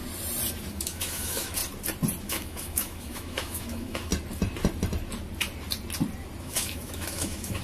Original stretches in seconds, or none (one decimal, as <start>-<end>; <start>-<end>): 0.0-0.7; 1.6-2.2; 4.1-6.4